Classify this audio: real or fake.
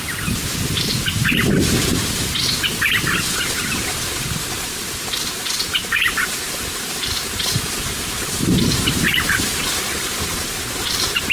fake